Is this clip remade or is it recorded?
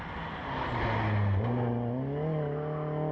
recorded